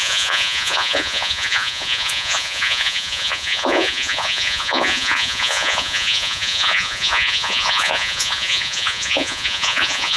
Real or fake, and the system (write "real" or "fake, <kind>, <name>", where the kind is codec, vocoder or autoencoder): fake, vocoder, Vocos